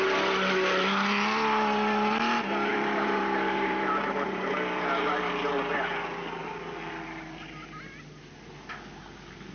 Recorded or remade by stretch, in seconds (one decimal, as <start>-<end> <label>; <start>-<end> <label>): 0.0-2.7 recorded; 2.7-5.3 remade; 5.3-9.5 recorded